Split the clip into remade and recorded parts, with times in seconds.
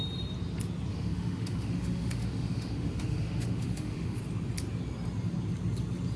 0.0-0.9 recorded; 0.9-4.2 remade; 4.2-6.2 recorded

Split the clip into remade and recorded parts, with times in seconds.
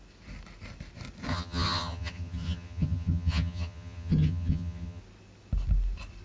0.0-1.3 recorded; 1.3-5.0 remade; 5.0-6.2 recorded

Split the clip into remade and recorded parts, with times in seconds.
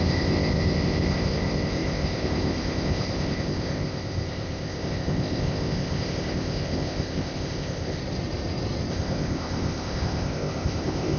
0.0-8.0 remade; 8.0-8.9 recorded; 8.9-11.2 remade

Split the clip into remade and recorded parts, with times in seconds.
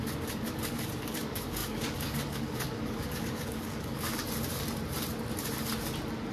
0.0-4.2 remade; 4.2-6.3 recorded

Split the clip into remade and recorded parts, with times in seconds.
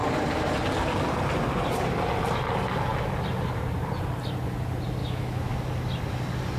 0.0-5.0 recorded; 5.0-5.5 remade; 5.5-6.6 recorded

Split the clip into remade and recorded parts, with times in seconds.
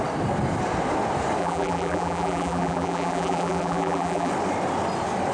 0.0-1.4 recorded; 1.4-4.3 remade; 4.3-5.3 recorded